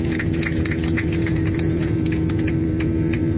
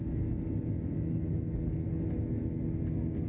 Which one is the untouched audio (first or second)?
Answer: second